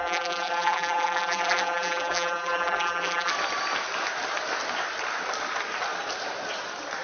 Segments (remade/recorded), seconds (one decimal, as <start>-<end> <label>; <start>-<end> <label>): 0.0-3.3 remade; 3.3-7.0 recorded